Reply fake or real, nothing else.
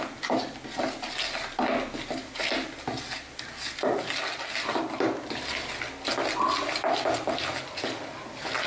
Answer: real